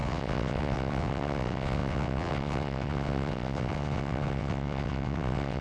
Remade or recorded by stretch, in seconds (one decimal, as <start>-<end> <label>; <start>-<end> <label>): 0.0-5.6 remade